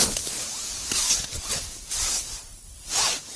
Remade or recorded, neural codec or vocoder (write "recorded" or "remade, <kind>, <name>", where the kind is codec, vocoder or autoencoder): recorded